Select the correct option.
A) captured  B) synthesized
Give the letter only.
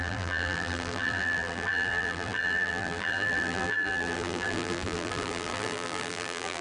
B